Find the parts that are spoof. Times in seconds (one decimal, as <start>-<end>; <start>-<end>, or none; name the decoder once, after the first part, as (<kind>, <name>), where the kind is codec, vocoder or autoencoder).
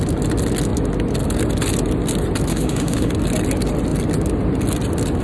2.5-3.1 (autoencoder, DAC-VAE)